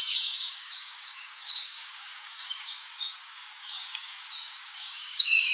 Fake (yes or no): yes